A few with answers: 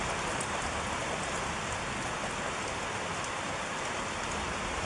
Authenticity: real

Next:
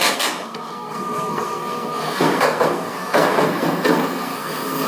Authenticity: fake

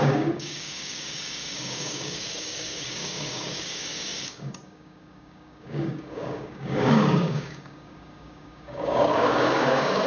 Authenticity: fake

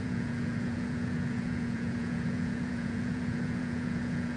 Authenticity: fake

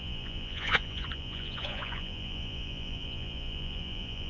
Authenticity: fake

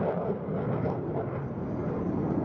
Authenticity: real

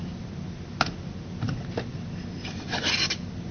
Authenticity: real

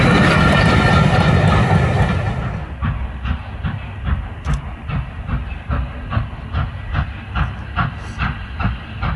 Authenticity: real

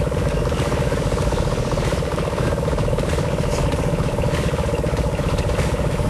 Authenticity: fake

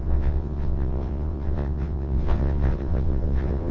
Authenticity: fake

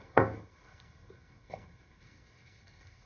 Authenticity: fake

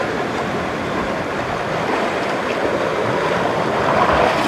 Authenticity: real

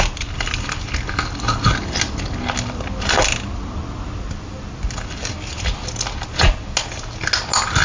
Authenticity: real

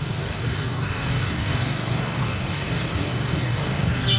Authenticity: fake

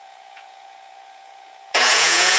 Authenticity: fake